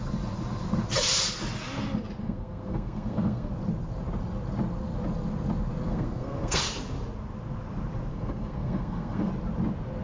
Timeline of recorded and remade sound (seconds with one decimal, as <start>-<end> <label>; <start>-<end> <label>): 0.0-2.2 recorded; 2.2-3.5 remade; 3.5-5.9 recorded; 5.9-6.6 remade; 6.6-8.1 recorded; 8.1-9.3 remade; 9.3-10.0 recorded

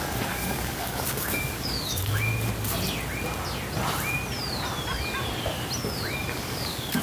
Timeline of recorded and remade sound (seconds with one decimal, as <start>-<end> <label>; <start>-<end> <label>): 0.0-2.3 remade; 2.3-6.3 recorded; 6.3-7.0 remade

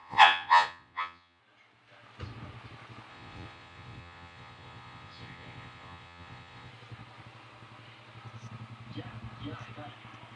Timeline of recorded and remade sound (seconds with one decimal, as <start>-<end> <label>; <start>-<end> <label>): 0.0-1.4 remade; 1.4-3.1 recorded; 3.1-6.7 remade; 6.7-10.4 recorded

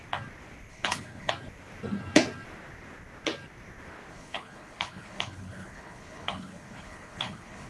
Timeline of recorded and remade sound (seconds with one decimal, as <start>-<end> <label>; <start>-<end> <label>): 0.0-0.7 recorded; 0.7-1.3 remade; 1.3-4.1 recorded; 4.1-7.7 remade